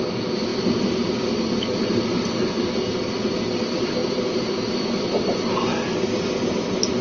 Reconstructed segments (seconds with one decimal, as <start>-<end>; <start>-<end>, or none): none